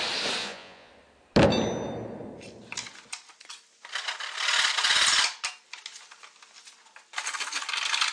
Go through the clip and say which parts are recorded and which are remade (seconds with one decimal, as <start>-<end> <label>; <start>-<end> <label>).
0.0-0.4 recorded; 0.4-0.9 remade; 0.9-8.1 recorded